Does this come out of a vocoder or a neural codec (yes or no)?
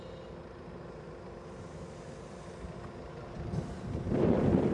no